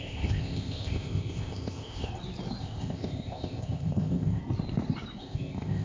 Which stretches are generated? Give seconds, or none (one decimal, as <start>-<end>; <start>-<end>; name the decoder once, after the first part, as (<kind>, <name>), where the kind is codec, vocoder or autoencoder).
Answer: 0.0-2.1 (codec, ZipCodec); 2.6-4.4; 5.2-5.8